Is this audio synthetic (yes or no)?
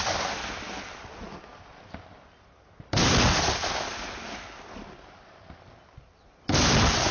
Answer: no